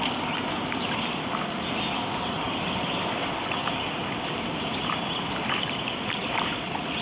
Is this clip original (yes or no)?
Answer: yes